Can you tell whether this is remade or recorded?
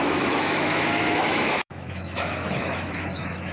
remade